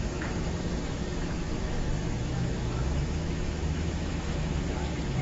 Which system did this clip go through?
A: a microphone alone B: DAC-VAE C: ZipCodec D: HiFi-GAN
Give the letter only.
B